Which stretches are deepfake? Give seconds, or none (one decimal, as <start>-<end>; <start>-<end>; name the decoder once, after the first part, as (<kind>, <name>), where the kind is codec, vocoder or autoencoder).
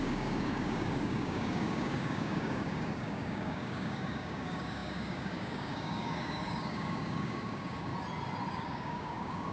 0.0-7.9 (codec, DAC); 8.5-9.5